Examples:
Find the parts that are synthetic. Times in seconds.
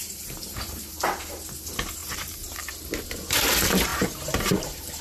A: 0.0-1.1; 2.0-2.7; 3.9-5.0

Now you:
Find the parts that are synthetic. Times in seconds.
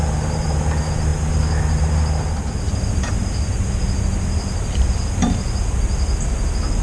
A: none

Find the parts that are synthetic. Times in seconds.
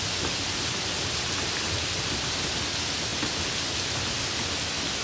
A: none